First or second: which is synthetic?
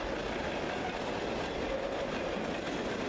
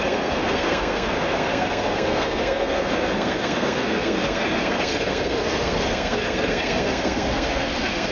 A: second